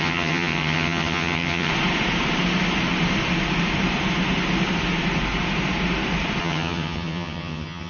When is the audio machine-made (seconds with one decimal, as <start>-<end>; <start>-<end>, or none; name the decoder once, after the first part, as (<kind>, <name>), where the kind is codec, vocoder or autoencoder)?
0.0-1.7 (vocoder, HiFi-GAN); 6.4-7.9